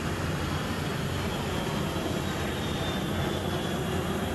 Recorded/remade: recorded